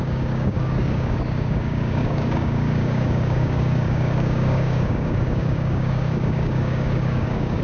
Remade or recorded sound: remade